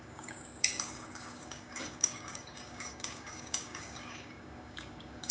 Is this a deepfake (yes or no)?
yes